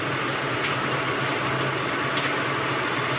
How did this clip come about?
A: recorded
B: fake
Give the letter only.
A